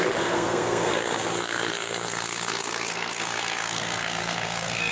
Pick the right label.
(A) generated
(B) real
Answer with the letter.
A